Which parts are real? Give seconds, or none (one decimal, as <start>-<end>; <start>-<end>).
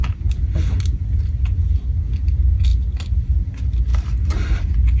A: 0.0-5.0